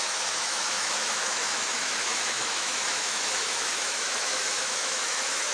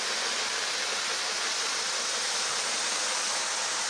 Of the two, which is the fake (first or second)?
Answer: first